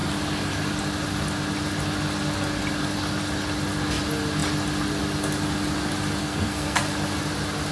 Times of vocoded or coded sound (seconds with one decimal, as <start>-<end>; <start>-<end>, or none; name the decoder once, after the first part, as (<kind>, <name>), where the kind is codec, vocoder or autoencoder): 6.2-6.8 (codec, SNAC)